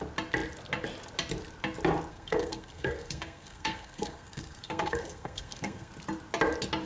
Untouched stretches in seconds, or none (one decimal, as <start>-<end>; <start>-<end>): 0.0-2.1; 5.9-6.9